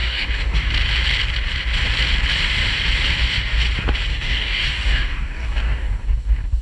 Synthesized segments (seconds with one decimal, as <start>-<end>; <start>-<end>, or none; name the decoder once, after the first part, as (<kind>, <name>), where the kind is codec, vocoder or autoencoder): 0.0-0.7 (codec, DAC); 4.1-6.6